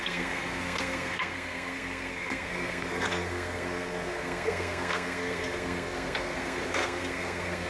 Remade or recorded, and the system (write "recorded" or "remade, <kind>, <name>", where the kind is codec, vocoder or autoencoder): remade, codec, SNAC